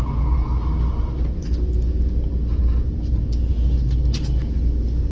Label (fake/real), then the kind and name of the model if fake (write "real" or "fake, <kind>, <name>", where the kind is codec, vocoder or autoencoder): real